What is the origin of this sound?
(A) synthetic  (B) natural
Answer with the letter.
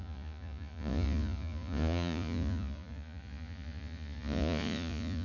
A